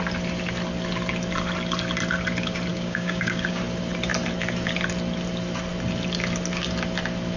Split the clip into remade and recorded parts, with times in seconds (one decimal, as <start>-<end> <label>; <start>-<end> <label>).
0.0-2.7 recorded; 2.7-3.6 remade; 3.6-7.4 recorded